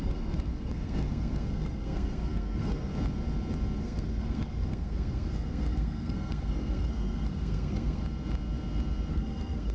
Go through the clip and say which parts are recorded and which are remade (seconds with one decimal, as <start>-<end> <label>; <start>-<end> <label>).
0.0-2.9 remade; 2.9-3.8 recorded; 3.8-8.0 remade; 8.0-9.1 recorded; 9.1-9.7 remade